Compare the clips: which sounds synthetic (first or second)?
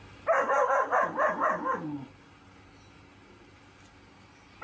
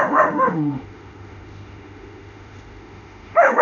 second